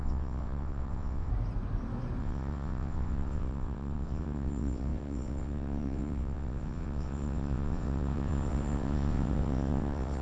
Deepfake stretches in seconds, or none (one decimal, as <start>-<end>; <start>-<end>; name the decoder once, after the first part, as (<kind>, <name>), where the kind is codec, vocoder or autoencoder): 0.0-1.3 (vocoder, WaveNeXt); 2.2-10.2